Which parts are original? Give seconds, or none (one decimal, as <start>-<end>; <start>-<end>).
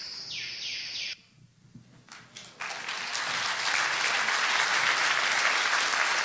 0.0-6.2